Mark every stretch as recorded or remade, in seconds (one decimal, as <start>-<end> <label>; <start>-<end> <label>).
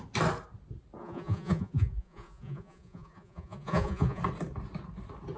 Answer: 0.0-1.0 recorded; 1.0-4.2 remade; 4.2-5.4 recorded